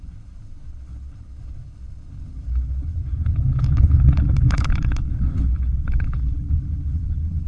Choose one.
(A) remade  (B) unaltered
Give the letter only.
A